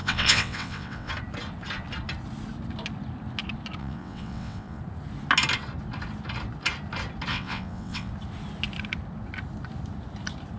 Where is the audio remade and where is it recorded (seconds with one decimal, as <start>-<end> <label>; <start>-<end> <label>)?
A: 0.0-1.1 remade; 1.1-3.8 recorded; 3.8-4.8 remade; 4.8-7.3 recorded; 7.3-8.1 remade; 8.1-10.6 recorded